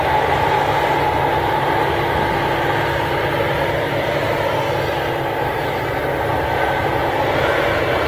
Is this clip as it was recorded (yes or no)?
yes